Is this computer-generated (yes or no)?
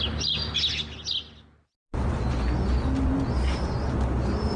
no